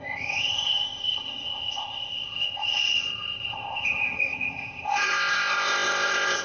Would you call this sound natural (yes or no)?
no